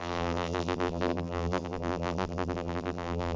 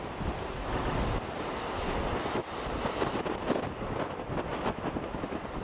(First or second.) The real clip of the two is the second